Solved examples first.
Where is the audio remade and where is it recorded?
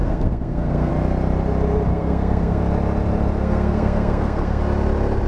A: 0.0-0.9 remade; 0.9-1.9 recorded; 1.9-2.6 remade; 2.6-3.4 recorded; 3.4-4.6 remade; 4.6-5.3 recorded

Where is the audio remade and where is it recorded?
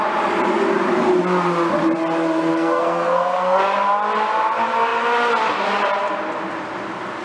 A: 0.0-2.5 recorded; 2.5-3.6 remade; 3.6-7.2 recorded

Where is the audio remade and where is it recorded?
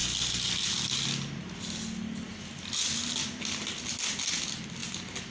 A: 0.0-5.3 recorded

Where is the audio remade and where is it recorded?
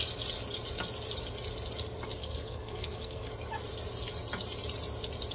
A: 0.0-2.2 recorded; 2.2-3.3 remade; 3.3-5.3 recorded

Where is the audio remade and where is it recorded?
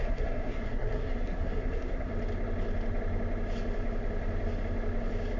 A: 0.0-2.1 remade; 2.1-5.4 recorded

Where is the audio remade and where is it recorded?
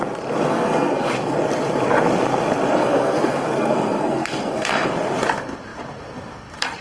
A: 0.0-0.5 recorded; 0.5-1.1 remade; 1.1-2.8 recorded; 2.8-4.9 remade; 4.9-6.8 recorded